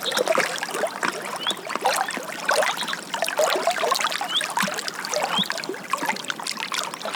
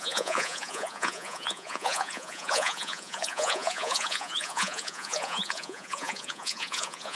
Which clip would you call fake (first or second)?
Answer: second